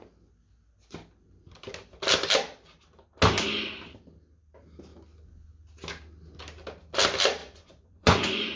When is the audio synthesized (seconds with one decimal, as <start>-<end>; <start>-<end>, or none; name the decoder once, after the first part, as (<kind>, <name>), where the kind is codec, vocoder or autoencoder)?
7.4-8.6 (vocoder, Vocos)